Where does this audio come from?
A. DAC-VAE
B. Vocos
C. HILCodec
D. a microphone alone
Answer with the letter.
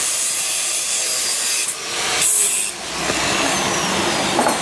D